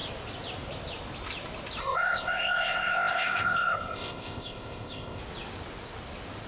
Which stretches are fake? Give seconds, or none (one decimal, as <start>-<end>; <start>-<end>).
1.8-5.2